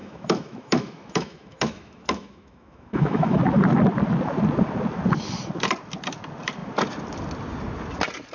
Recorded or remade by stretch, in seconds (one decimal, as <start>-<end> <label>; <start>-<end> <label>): 0.0-3.4 remade; 3.4-8.3 recorded